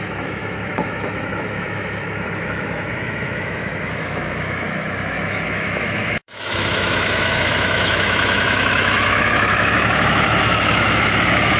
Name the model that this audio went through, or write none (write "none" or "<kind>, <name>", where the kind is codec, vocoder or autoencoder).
autoencoder, DAC-VAE